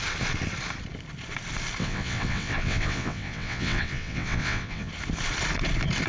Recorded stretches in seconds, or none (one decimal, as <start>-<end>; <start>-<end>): 0.0-1.8; 4.9-6.1